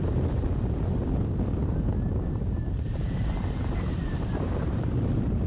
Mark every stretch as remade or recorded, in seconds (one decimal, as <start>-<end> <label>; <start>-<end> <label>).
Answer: 0.0-1.6 recorded; 1.6-4.9 remade; 4.9-5.5 recorded